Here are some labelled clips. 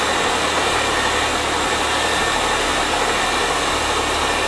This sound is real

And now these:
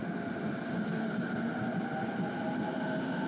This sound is real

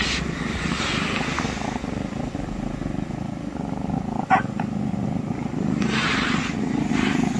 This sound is real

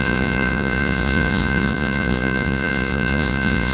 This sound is fake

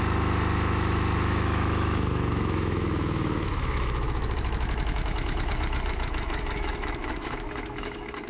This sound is fake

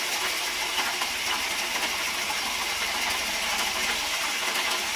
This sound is real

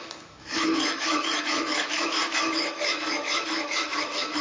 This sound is fake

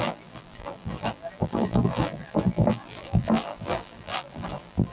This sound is fake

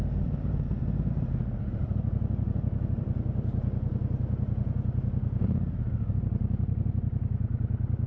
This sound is fake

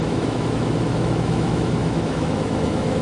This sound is fake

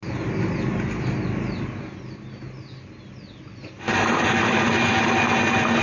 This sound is real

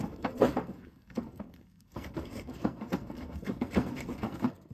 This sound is fake